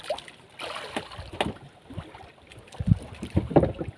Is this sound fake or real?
real